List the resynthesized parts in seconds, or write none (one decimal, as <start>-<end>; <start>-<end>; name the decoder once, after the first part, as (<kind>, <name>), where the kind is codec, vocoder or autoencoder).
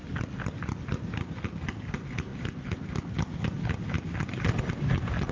none